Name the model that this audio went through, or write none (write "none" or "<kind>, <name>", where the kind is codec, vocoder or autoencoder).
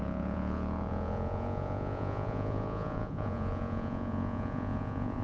vocoder, Vocos